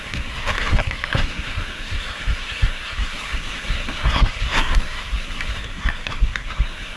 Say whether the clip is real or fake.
fake